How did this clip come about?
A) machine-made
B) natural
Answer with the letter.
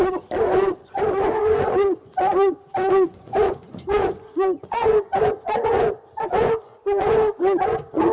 A